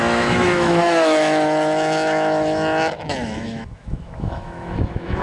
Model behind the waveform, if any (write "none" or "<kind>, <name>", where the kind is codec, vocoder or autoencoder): autoencoder, DAC-VAE